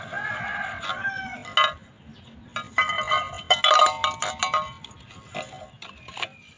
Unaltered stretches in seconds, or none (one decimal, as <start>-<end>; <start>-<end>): 0.0-6.6